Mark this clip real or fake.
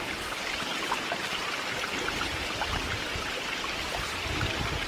fake